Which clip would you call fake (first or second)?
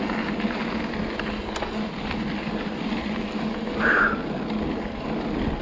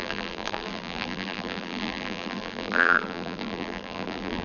second